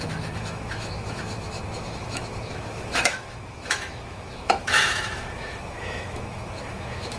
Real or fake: fake